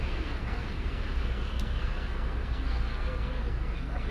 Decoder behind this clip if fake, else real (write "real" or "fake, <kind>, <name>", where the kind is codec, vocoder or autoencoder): fake, codec, SNAC